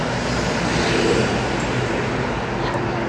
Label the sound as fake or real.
real